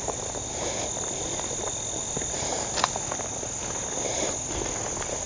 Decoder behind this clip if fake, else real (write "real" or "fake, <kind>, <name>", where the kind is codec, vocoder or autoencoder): real